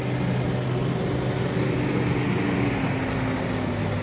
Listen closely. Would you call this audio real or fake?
real